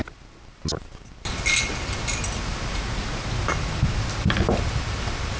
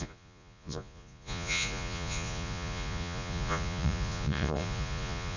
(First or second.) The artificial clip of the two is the second